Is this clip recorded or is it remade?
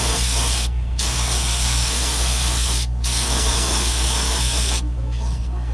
remade